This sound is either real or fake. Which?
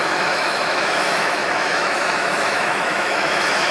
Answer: fake